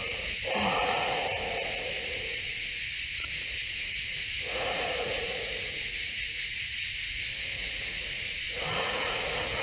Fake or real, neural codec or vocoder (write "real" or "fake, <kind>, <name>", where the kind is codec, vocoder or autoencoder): fake, vocoder, Vocos